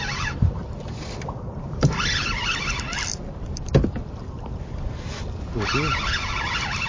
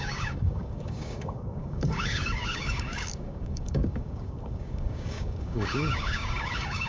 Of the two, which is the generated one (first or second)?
second